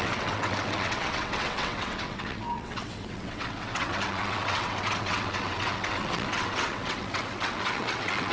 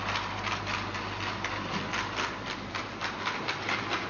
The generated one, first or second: first